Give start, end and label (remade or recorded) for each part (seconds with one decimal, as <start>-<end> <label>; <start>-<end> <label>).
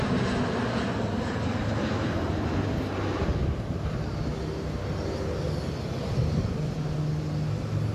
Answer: 0.0-1.1 recorded; 1.1-2.3 remade; 2.3-3.4 recorded; 3.4-4.0 remade; 4.0-7.9 recorded